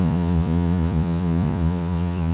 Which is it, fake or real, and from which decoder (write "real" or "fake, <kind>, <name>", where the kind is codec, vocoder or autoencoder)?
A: fake, vocoder, Vocos